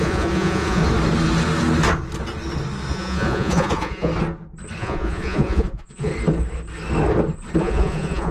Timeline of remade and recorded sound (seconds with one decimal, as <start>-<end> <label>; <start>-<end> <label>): 0.0-0.8 remade; 0.8-2.9 recorded; 2.9-4.1 remade; 4.1-4.8 recorded; 4.8-6.1 remade; 6.1-7.6 recorded; 7.6-8.3 remade